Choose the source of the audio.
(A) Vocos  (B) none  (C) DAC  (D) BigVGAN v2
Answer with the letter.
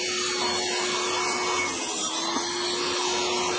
B